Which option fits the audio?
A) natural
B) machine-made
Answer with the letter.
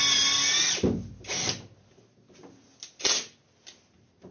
A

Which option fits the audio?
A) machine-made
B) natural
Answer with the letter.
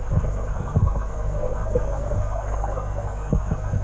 A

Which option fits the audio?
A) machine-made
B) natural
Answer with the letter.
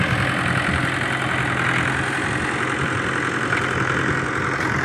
B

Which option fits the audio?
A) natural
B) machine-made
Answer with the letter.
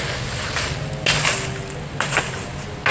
A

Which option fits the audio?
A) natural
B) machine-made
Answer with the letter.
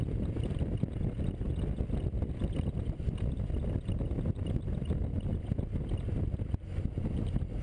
A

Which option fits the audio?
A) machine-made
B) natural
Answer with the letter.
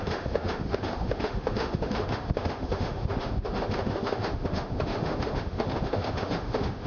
A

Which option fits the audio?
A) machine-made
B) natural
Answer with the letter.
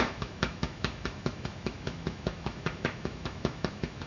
A